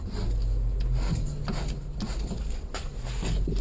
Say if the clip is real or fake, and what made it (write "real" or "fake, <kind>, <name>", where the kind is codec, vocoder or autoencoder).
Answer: real